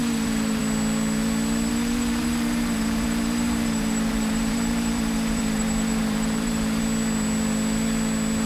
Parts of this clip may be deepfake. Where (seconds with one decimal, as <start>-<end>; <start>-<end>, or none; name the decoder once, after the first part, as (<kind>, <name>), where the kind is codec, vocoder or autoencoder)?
0.0-0.6 (vocoder, BigVGAN v2); 1.7-6.8